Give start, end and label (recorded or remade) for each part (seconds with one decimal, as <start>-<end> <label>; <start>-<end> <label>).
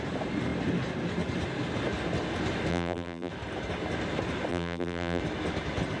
0.0-2.7 recorded; 2.7-3.3 remade; 3.3-4.5 recorded; 4.5-5.2 remade; 5.2-6.0 recorded